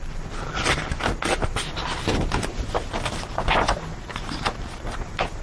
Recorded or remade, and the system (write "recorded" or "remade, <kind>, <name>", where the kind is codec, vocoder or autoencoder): recorded